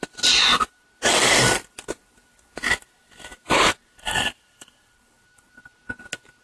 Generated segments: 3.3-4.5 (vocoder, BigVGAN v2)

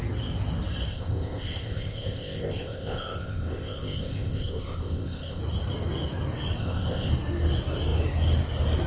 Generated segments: 0.9-5.4 (codec, ZipCodec); 6.6-7.1

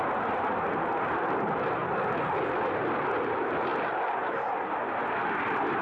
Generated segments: none

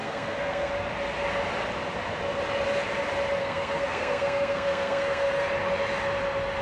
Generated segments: 0.0-0.7 (codec, SNAC); 3.4-5.5

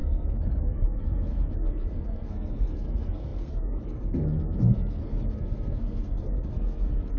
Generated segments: 0.0-7.2 (codec, SNAC)

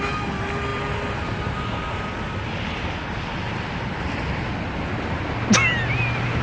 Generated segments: none